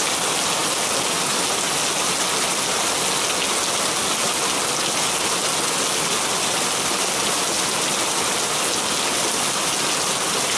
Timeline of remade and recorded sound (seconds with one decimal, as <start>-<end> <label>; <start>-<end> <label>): 0.0-10.6 recorded